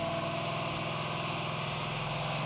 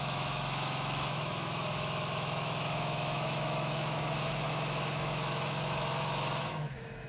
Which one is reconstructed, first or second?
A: second